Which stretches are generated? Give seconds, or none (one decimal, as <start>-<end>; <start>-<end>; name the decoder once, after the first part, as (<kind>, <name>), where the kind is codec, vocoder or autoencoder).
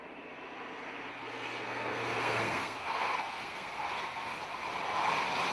1.1-4.4 (codec, SNAC)